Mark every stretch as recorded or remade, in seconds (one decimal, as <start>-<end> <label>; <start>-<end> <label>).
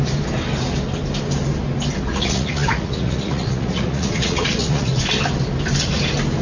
0.0-2.1 recorded; 2.1-5.0 remade; 5.0-6.4 recorded